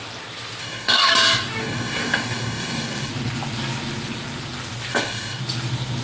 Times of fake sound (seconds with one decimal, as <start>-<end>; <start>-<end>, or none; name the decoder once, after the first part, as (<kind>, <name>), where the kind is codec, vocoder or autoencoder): 0.6-1.1 (codec, DAC); 1.6-3.1; 4.9-5.4